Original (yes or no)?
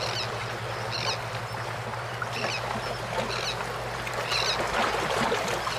yes